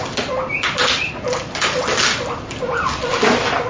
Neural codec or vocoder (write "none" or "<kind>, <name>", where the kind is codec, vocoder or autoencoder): none